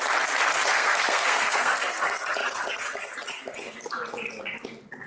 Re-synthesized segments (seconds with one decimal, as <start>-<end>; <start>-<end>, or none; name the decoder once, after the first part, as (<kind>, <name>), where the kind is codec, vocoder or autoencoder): 0.7-2.0 (codec, SNAC)